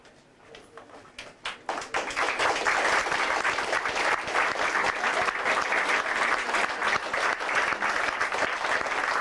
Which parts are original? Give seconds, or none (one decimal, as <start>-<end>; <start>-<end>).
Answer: 0.0-9.2